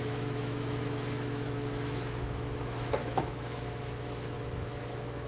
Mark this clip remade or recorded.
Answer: remade